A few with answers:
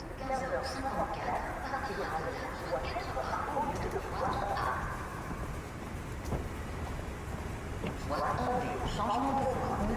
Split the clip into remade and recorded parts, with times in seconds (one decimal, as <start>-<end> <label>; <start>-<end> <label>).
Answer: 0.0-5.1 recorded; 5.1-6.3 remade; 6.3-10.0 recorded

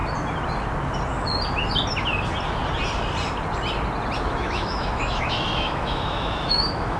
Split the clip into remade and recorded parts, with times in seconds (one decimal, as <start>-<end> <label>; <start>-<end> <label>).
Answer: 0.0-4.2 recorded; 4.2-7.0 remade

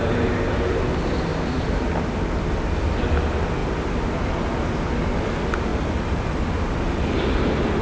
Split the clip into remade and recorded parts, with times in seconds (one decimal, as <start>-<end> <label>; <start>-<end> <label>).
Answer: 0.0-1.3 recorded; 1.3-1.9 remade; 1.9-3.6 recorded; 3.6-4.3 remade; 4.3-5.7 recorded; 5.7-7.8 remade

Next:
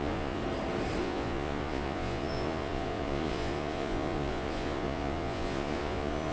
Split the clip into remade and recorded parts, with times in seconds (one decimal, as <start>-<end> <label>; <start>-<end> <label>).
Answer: 0.0-0.4 remade; 0.4-1.0 recorded; 1.0-6.3 remade

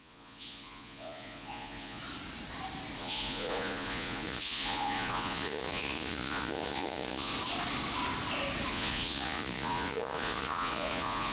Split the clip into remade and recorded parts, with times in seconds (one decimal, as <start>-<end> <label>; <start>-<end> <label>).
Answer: 0.0-2.0 remade; 2.0-3.0 recorded; 3.0-7.3 remade; 7.3-8.7 recorded; 8.7-11.3 remade